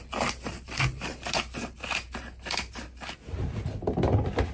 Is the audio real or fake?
real